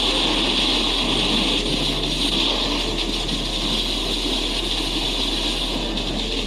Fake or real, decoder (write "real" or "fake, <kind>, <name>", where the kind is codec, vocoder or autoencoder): real